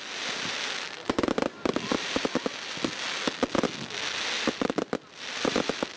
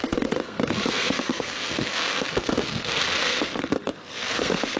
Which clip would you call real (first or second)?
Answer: first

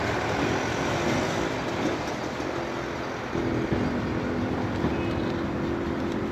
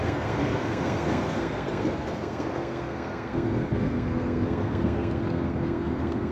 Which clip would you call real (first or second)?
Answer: first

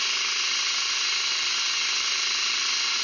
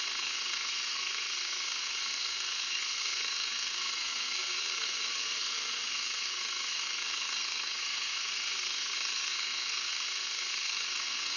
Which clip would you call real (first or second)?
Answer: first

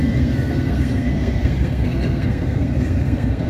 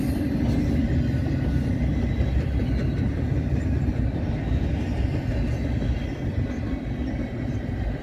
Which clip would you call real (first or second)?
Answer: second